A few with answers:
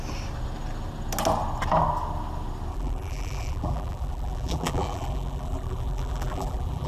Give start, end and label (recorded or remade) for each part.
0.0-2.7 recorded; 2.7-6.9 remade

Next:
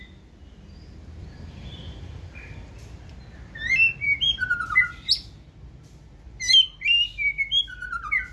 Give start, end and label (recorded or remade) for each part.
0.0-1.2 recorded; 1.2-2.7 remade; 2.7-8.3 recorded

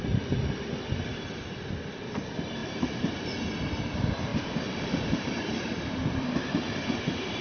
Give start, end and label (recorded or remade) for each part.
0.0-2.6 recorded; 2.6-3.3 remade; 3.3-4.3 recorded; 4.3-7.4 remade

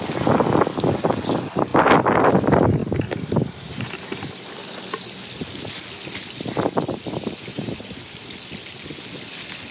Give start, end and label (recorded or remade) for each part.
0.0-2.8 recorded; 2.8-4.4 remade; 4.4-7.5 recorded; 7.5-8.3 remade; 8.3-9.7 recorded

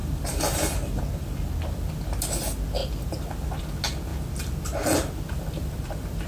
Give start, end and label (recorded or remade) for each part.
0.0-1.0 remade; 1.0-6.3 recorded

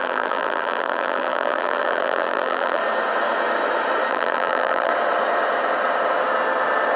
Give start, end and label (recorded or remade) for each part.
0.0-2.8 remade; 2.8-4.1 recorded; 4.1-4.9 remade; 4.9-7.0 recorded

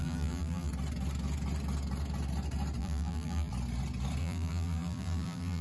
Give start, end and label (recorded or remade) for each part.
0.0-0.7 remade; 0.7-2.8 recorded; 2.8-3.5 remade; 3.5-4.2 recorded; 4.2-5.6 remade